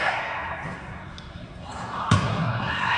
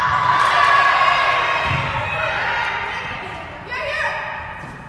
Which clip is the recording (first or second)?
second